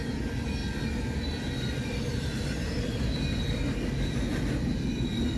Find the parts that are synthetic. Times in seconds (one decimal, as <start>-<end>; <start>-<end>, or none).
none